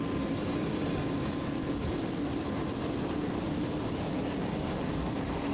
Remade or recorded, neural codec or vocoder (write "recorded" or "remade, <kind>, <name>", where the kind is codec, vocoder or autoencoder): recorded